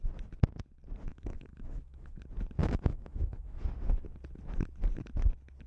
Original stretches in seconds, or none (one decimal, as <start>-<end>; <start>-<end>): 0.0-1.1; 2.2-2.6; 3.6-5.7